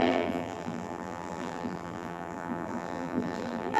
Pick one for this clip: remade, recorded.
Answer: remade